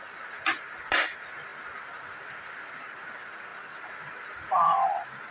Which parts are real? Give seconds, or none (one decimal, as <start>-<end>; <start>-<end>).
0.0-3.5